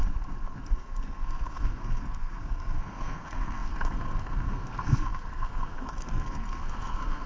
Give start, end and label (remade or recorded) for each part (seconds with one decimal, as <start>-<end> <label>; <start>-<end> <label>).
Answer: 0.0-0.7 recorded; 0.7-7.3 remade